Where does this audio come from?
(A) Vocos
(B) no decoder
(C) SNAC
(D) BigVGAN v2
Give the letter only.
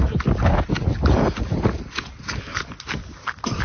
B